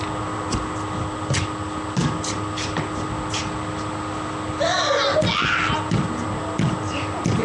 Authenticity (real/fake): real